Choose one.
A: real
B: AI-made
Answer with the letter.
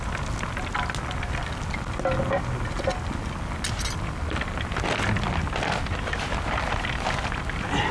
A